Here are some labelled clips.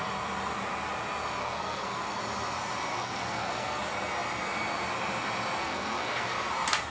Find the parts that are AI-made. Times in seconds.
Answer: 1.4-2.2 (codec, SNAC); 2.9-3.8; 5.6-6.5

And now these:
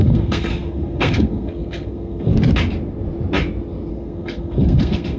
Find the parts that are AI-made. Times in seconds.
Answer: 0.0-2.3 (codec, SNAC); 3.9-5.2

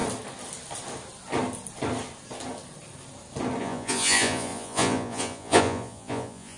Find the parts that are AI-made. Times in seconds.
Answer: 3.6-6.6 (vocoder, Vocos)

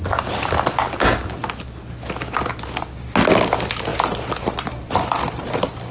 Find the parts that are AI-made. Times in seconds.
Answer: none

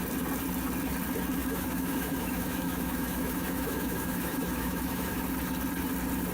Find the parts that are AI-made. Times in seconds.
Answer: 1.4-5.2 (autoencoder, DAC-VAE)